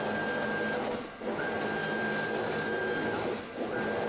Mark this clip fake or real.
real